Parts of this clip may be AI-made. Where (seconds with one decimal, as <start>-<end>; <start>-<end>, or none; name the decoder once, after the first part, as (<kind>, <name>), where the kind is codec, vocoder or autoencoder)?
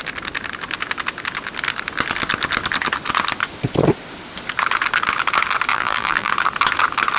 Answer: 5.7-6.3 (vocoder, BigVGAN v2)